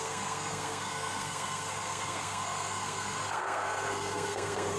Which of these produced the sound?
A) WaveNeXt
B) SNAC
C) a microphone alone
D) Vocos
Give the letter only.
B